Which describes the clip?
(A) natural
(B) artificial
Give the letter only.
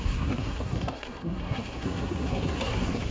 B